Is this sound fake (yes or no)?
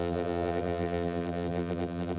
yes